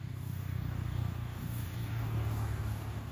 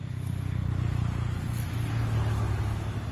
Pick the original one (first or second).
second